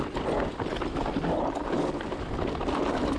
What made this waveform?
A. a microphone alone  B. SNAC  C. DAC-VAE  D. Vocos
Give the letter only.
A